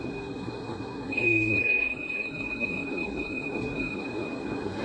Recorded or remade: remade